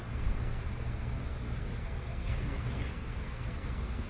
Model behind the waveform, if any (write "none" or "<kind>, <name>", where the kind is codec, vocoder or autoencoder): codec, SNAC